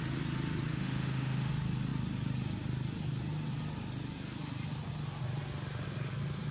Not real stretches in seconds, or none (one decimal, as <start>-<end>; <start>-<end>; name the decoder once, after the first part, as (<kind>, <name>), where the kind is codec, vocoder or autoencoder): 0.7-1.5 (autoencoder, DAC-VAE)